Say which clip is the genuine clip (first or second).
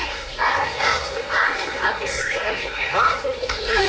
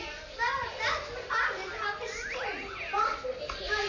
second